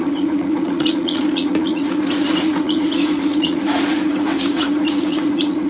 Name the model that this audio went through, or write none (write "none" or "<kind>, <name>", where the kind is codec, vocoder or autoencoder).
vocoder, Vocos